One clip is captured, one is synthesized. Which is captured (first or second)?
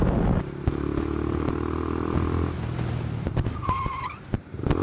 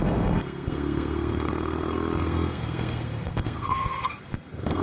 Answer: first